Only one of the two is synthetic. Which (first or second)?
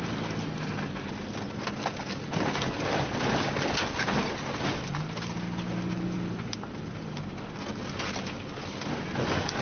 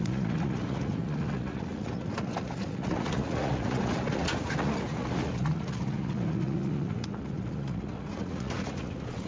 second